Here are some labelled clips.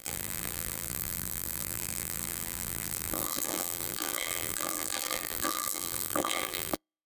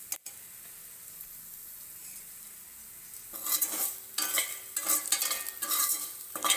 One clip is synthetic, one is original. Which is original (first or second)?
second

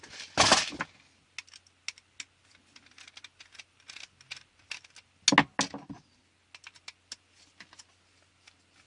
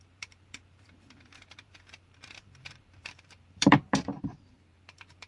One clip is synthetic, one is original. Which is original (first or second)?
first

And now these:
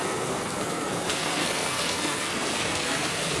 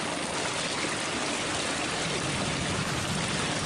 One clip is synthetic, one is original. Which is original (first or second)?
second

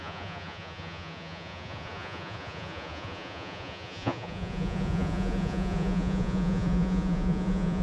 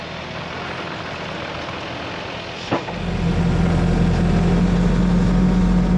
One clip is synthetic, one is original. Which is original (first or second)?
second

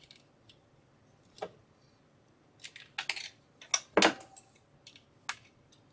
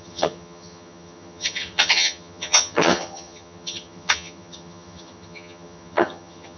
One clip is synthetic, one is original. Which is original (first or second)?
first